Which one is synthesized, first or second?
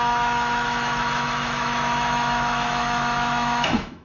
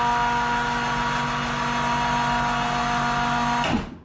first